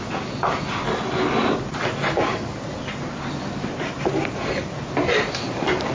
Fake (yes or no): no